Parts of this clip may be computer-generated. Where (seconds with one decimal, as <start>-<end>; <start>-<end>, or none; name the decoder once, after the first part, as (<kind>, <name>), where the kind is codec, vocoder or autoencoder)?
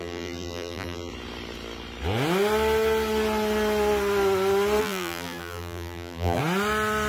0.0-1.1 (vocoder, BigVGAN v2); 4.8-6.4